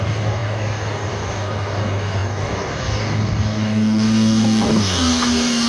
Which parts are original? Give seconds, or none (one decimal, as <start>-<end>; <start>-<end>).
none